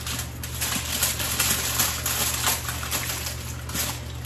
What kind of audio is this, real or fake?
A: real